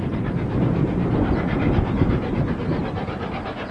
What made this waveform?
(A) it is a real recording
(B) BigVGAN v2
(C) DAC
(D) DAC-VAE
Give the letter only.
B